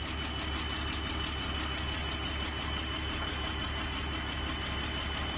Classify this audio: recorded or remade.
recorded